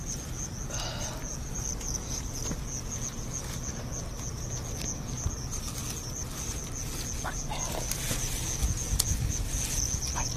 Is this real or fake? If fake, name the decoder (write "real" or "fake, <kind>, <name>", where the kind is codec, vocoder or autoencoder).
real